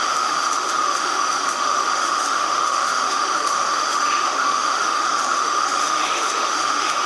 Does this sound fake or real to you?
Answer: fake